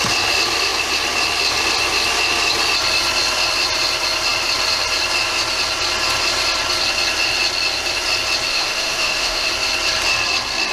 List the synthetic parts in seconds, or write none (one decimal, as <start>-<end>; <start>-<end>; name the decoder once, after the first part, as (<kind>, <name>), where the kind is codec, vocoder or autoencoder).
8.5-9.5 (autoencoder, DAC-VAE)